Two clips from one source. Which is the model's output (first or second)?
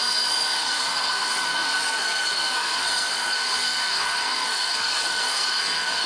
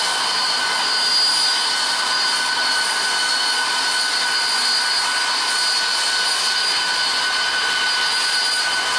first